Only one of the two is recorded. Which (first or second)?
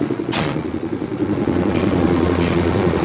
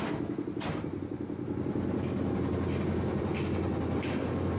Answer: second